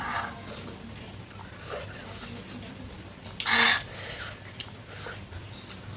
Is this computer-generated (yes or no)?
no